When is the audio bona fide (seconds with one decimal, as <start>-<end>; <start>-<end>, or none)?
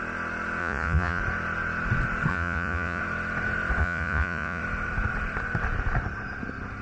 0.0-0.6; 1.2-2.3; 3.0-3.8; 4.6-6.8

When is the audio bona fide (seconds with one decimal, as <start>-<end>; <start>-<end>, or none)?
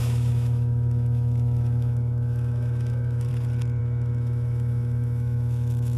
3.3-3.8